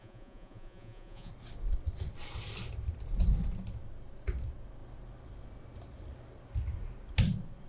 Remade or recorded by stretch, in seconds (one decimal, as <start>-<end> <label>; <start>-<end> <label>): 0.0-1.3 remade; 1.3-7.7 recorded